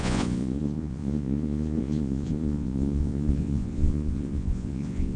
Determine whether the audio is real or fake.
fake